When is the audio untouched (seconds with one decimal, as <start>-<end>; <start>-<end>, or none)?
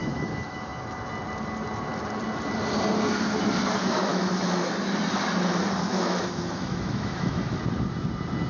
0.8-4.1; 4.7-5.9; 7.6-8.5